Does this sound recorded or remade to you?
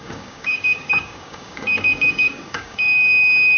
remade